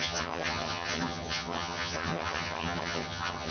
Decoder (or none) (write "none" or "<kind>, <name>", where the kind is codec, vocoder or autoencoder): vocoder, HiFi-GAN